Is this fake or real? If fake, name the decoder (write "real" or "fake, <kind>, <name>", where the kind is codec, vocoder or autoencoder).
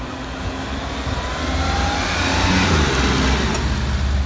real